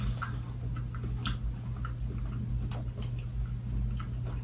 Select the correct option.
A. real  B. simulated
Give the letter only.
A